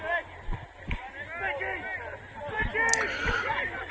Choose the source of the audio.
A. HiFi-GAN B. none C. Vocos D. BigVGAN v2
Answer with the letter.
B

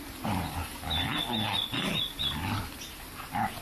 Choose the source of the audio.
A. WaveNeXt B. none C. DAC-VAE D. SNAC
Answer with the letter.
B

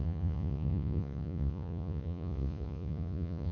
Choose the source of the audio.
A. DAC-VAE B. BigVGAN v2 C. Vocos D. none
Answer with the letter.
C